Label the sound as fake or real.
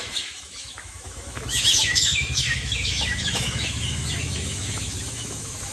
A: fake